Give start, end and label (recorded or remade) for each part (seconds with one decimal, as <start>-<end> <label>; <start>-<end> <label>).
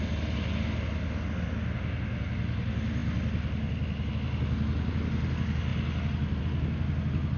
0.0-7.4 recorded